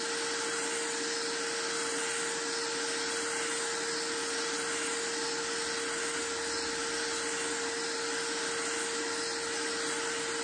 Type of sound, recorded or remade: recorded